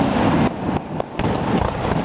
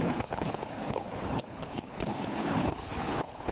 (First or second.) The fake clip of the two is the second